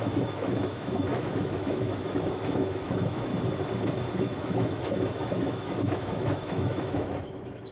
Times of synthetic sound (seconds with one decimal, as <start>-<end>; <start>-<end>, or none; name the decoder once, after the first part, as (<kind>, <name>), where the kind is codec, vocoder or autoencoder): 0.0-3.3 (autoencoder, DAC-VAE); 4.2-7.7